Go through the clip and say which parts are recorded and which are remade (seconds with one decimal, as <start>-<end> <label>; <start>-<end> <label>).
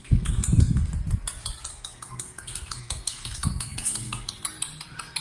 0.0-0.9 remade; 0.9-1.7 recorded; 1.7-4.3 remade; 4.3-5.2 recorded